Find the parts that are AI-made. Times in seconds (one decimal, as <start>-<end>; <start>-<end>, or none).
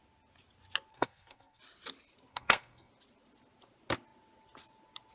0.9-1.6; 2.3-2.9